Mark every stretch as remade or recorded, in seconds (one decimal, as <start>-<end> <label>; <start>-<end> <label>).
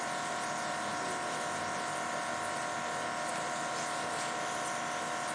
0.0-5.3 recorded